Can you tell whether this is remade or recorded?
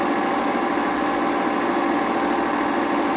recorded